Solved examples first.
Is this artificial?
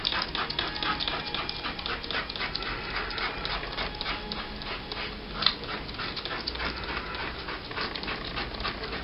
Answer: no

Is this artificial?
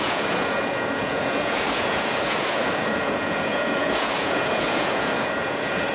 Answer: yes